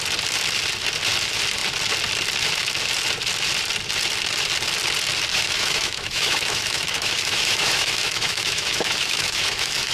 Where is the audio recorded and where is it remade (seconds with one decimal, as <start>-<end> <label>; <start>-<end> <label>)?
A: 0.0-5.3 recorded; 5.3-9.9 remade